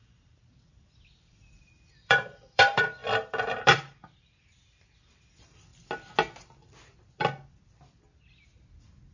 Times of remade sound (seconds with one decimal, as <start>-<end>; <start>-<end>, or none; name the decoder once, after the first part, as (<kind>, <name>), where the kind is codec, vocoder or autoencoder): 0.0-5.7 (vocoder, BigVGAN v2)